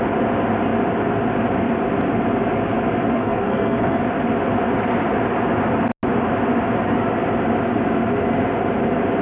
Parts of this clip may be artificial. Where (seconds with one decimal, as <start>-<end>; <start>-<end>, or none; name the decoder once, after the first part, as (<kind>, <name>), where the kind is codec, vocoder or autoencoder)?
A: 3.1-4.0 (codec, SNAC)